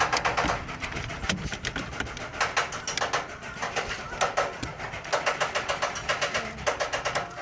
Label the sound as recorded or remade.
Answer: recorded